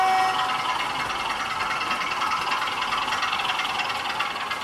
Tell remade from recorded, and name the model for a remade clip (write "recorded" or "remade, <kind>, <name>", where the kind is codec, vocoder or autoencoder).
recorded